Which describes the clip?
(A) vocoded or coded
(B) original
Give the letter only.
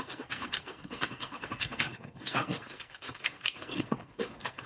A